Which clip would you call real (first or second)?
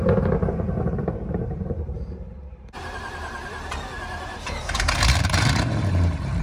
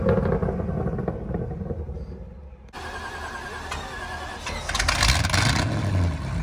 second